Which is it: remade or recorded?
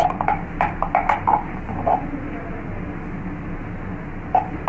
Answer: recorded